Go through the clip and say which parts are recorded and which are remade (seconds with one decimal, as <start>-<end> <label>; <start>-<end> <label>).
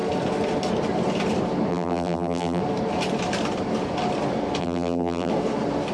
0.0-1.7 recorded; 1.7-2.6 remade; 2.6-4.6 recorded; 4.6-5.3 remade; 5.3-5.9 recorded